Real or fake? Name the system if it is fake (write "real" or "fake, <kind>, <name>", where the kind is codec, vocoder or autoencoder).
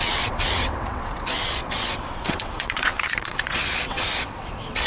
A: fake, vocoder, WaveNeXt